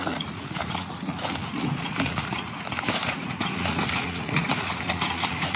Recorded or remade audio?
remade